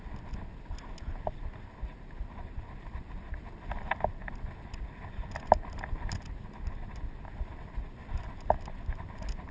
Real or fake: real